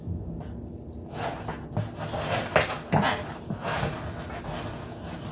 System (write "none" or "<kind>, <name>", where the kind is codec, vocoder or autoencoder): none